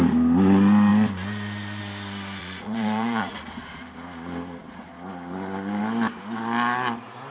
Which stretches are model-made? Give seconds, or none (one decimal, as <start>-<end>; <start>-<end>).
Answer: 2.4-3.5